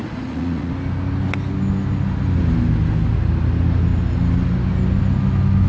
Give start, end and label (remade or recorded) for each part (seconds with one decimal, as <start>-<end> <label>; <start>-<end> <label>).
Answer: 0.0-0.7 remade; 0.7-5.7 recorded